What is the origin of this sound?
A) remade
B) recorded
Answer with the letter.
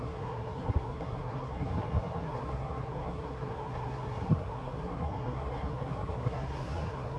A